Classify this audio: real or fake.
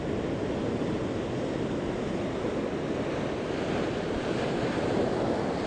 real